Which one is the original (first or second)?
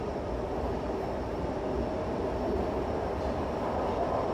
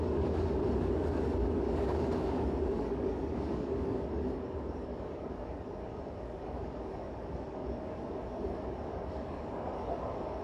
first